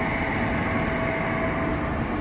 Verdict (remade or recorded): recorded